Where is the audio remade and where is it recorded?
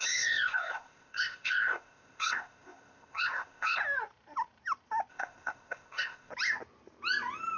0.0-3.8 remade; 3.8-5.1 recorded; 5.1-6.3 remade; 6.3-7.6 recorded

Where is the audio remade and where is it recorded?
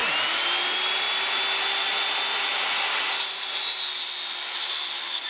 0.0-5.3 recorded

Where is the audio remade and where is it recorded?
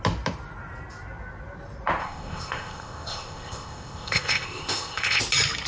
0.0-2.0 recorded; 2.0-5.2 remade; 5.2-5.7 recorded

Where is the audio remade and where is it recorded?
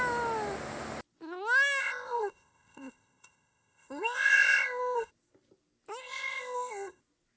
0.0-1.8 recorded; 1.8-5.1 remade; 5.1-6.0 recorded; 6.0-7.0 remade; 7.0-7.4 recorded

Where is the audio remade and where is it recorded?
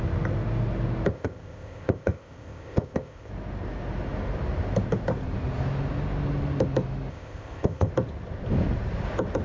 0.0-1.1 recorded; 1.1-3.3 remade; 3.3-7.1 recorded; 7.1-7.9 remade; 7.9-9.4 recorded